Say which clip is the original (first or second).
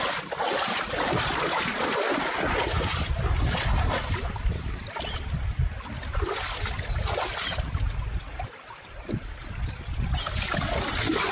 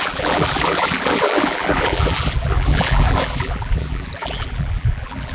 first